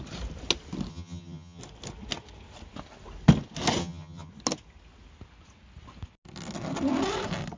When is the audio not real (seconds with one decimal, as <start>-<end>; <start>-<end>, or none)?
0.9-1.6; 3.8-4.3